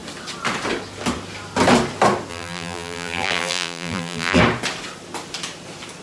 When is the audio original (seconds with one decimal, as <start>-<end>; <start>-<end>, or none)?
0.0-2.3; 4.4-6.0